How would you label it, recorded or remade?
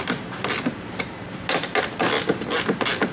recorded